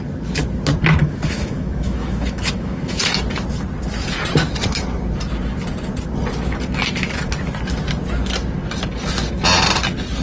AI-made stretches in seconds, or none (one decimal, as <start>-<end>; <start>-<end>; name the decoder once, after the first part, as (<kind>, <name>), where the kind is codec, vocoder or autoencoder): 1.0-3.0 (autoencoder, DAC-VAE)